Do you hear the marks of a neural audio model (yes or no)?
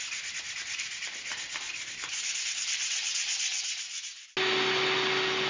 no